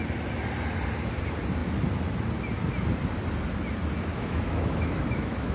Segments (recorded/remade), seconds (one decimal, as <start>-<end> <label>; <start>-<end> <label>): 0.0-4.1 recorded; 4.1-5.5 remade